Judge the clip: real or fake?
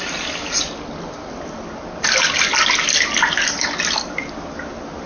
real